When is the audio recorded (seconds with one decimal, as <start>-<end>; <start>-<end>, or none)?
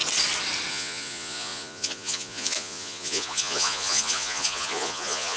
0.0-0.7